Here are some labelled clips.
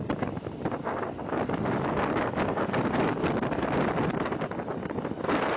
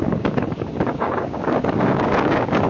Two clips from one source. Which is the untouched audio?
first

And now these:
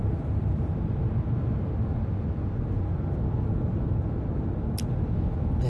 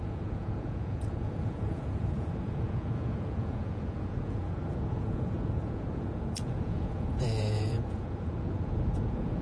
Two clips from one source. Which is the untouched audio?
first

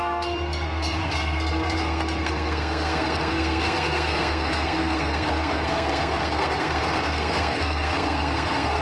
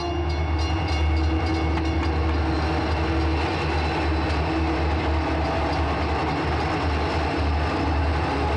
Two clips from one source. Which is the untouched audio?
second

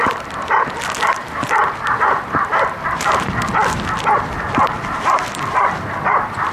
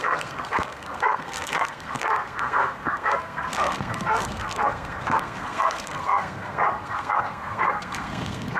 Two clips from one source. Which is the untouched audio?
first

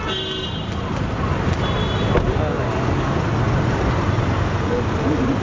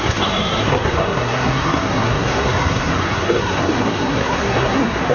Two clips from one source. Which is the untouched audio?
first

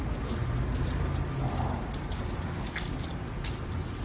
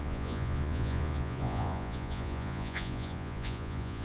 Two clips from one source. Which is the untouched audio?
first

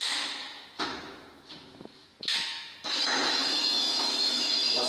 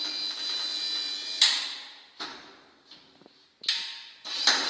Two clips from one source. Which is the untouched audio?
second